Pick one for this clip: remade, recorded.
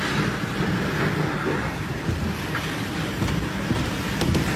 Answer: recorded